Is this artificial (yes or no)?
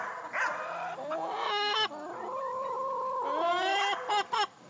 no